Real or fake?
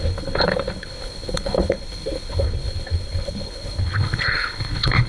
fake